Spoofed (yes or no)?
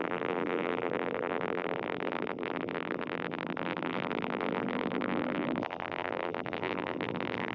yes